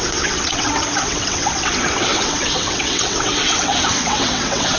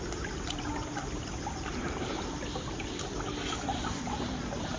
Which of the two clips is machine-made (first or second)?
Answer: first